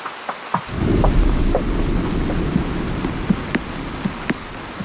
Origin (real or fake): real